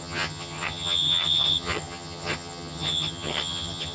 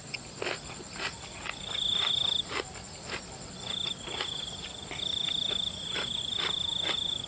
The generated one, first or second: first